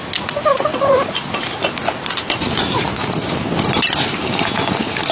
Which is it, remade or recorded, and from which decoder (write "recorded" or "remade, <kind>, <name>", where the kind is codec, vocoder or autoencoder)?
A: recorded